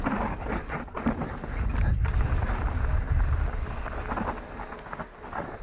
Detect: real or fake real